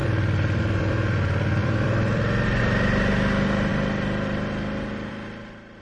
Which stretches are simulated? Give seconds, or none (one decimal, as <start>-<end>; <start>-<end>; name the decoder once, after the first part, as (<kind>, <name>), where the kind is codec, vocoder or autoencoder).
0.0-0.9 (vocoder, BigVGAN v2); 1.6-2.6